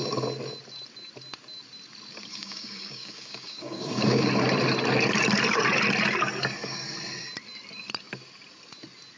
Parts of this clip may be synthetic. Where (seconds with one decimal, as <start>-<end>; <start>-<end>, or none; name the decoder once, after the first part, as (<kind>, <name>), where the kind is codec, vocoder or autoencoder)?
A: 2.3-4.3 (codec, DAC)